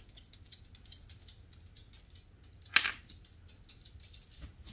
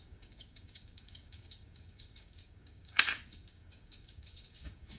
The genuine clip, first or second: first